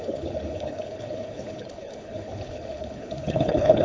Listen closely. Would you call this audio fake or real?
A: fake